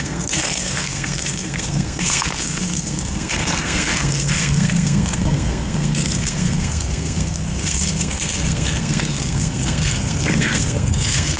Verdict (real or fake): fake